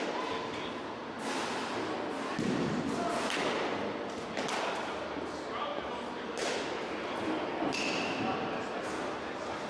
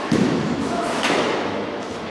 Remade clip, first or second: second